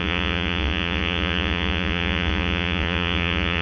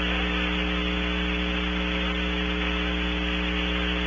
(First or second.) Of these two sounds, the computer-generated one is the first